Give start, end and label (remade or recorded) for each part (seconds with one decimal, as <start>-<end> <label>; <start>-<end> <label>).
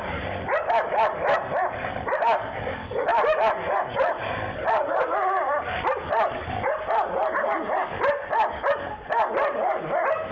0.0-10.3 recorded